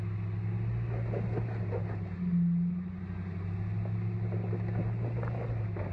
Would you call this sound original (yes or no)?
yes